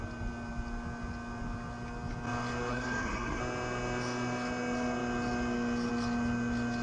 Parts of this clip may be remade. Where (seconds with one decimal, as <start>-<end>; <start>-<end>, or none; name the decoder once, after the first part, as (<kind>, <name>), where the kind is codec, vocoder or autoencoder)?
2.7-3.4 (codec, SNAC)